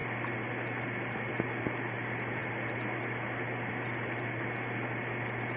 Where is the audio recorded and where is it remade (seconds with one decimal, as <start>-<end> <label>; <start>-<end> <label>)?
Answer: 0.0-5.6 recorded